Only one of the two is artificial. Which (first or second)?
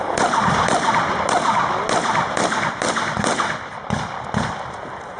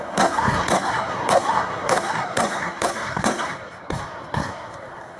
second